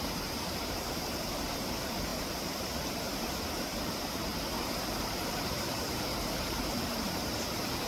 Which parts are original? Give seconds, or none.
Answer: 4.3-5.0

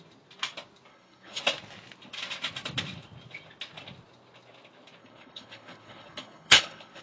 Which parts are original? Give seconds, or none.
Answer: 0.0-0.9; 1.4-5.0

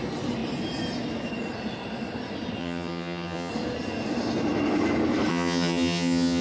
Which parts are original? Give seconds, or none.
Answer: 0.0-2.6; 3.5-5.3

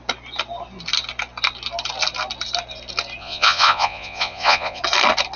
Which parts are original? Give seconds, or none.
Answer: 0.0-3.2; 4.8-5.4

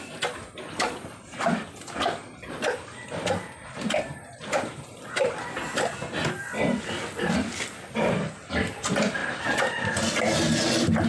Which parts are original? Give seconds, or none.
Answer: 0.0-11.1

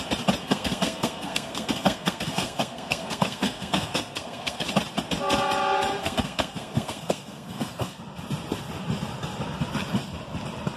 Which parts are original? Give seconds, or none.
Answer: 0.0-0.4; 4.7-6.0; 8.0-10.8